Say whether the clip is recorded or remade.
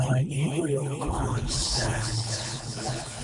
remade